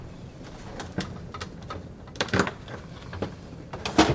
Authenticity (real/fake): real